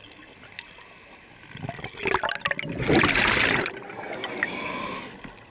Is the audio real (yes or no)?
yes